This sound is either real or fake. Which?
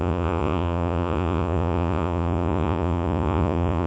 fake